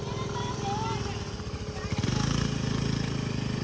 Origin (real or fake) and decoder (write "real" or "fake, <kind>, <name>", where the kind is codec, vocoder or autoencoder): real